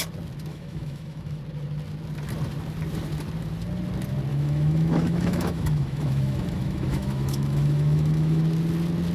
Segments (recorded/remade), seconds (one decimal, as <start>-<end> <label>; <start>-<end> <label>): 0.0-0.5 recorded; 0.5-1.4 remade; 1.4-4.3 recorded; 4.3-8.4 remade; 8.4-9.1 recorded